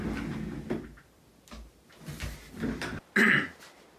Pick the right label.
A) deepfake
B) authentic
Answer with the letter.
B